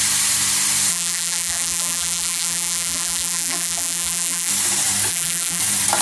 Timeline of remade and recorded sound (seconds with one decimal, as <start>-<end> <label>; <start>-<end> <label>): 0.0-0.9 recorded; 0.9-4.5 remade; 4.5-5.1 recorded; 5.1-5.6 remade; 5.6-6.0 recorded